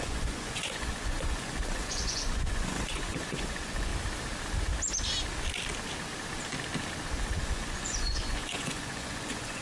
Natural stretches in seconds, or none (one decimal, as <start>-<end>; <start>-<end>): 3.9-7.4